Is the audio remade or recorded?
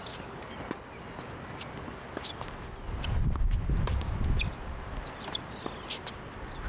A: recorded